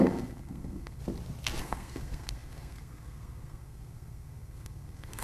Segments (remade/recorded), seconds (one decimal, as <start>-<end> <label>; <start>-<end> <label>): 0.0-1.0 remade; 1.0-1.6 recorded; 1.6-5.2 remade